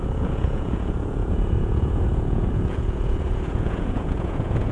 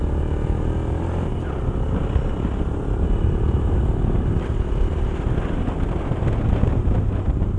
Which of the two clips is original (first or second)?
second